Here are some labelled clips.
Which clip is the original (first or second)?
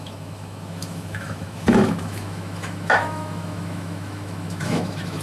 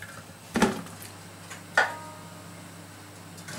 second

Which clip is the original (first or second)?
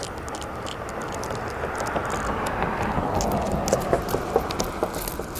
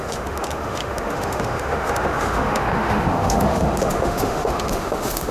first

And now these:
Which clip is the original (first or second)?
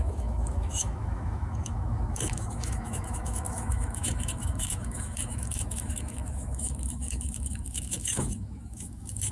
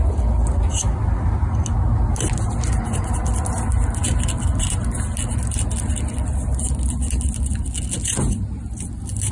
second